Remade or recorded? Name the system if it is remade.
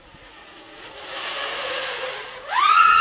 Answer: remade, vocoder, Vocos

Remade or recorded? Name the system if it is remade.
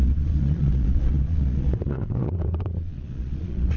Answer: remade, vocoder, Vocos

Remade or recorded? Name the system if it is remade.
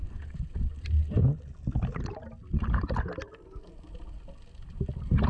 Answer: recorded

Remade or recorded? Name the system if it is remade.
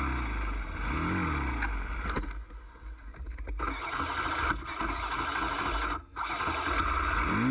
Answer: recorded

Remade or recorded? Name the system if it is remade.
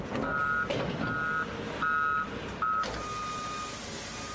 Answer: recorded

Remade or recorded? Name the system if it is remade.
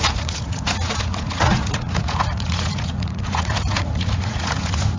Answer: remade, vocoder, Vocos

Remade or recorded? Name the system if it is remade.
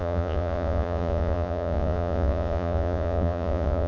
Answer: remade, vocoder, Vocos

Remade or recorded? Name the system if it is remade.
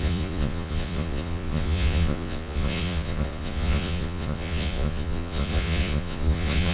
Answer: remade, vocoder, Vocos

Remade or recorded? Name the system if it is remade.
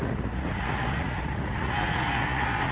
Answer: remade, vocoder, Vocos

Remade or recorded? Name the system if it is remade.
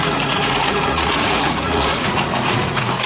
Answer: remade, vocoder, Vocos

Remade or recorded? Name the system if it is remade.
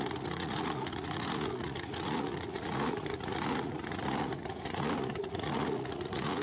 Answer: remade, vocoder, Vocos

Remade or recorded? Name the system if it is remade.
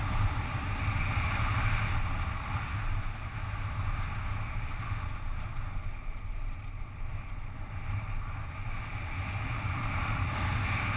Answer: recorded